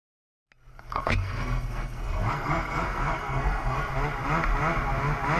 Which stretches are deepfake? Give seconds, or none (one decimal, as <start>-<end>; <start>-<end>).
0.7-3.9